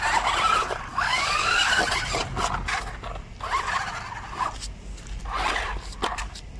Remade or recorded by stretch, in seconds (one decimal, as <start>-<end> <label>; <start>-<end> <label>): 0.0-0.9 recorded; 0.9-1.8 remade; 1.8-6.6 recorded